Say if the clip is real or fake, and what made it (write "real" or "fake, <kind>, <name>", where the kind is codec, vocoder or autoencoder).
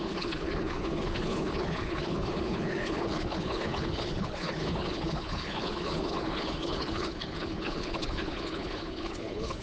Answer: fake, codec, HILCodec